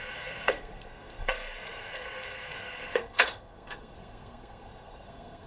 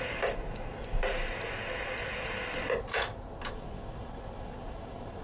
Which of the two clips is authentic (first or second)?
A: second